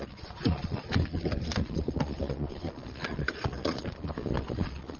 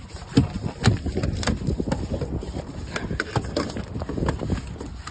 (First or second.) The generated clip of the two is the first